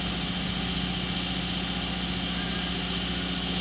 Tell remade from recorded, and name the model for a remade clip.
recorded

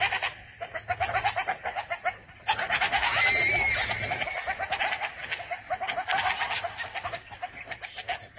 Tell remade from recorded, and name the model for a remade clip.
recorded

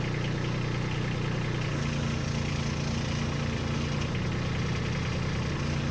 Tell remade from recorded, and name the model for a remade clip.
recorded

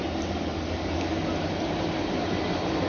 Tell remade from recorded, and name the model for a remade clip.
recorded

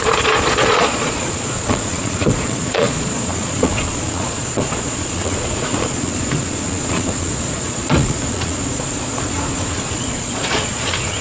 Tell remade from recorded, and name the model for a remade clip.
remade, vocoder, Vocos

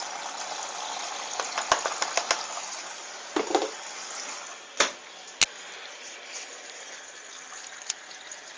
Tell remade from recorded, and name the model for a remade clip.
recorded